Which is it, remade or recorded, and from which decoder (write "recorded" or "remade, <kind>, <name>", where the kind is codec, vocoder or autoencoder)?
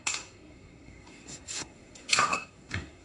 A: remade, codec, SNAC